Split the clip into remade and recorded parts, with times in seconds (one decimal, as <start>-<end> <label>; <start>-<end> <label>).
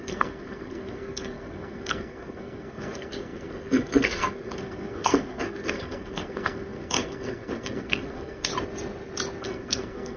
0.0-8.5 remade; 8.5-9.4 recorded; 9.4-10.2 remade